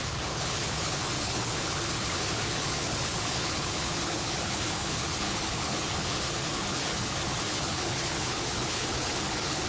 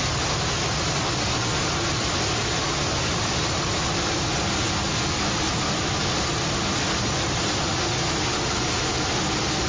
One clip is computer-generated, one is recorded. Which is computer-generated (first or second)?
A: first